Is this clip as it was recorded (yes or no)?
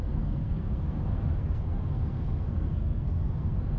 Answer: no